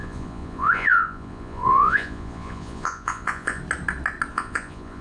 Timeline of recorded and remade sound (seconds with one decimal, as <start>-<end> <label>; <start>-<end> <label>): 0.0-3.6 remade; 3.6-4.3 recorded; 4.3-5.0 remade